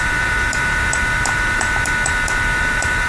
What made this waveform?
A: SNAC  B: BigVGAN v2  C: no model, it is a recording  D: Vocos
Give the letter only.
B